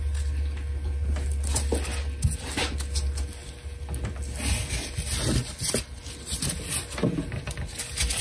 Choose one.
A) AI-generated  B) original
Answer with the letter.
B